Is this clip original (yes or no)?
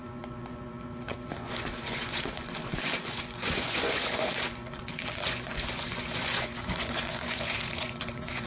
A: no